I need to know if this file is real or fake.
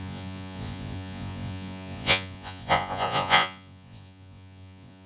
fake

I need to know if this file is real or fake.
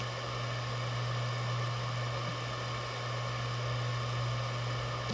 real